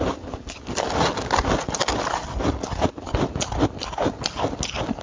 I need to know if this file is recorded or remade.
recorded